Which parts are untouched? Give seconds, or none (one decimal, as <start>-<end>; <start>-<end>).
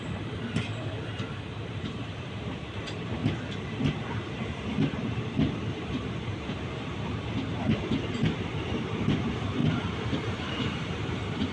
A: 3.2-3.8